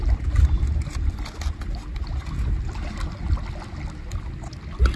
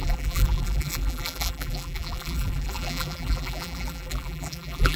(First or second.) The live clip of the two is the first